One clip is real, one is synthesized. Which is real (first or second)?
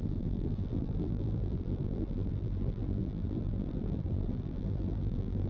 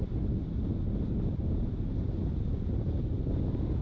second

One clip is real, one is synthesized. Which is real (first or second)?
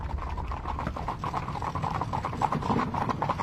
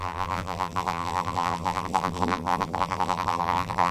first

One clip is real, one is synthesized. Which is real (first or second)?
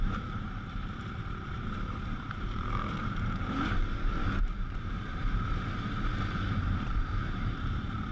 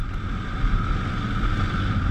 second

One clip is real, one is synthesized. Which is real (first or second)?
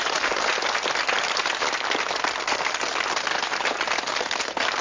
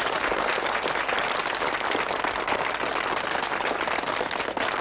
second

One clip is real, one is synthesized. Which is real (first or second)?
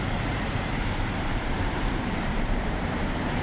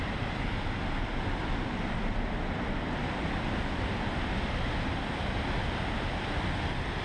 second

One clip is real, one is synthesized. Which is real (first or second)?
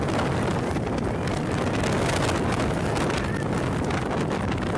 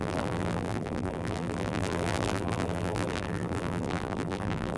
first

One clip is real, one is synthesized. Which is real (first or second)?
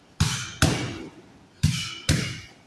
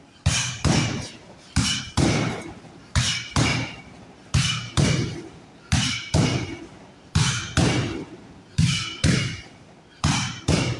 first